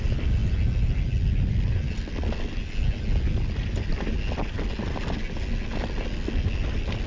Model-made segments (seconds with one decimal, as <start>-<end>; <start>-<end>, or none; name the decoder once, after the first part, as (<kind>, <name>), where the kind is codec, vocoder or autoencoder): none